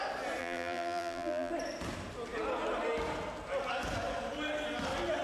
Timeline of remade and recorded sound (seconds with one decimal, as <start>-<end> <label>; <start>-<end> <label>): 0.0-0.4 recorded; 0.4-1.5 remade; 1.5-5.2 recorded